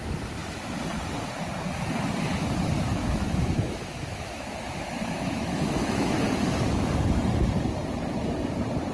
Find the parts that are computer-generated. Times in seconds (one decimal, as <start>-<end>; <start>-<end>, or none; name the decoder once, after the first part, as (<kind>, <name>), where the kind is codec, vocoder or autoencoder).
2.9-6.2 (autoencoder, DAC-VAE)